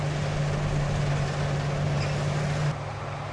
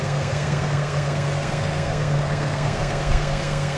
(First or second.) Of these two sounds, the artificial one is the second